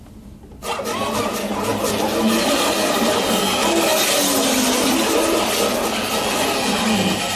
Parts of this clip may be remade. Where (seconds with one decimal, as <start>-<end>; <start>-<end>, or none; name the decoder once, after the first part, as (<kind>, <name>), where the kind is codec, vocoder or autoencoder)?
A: none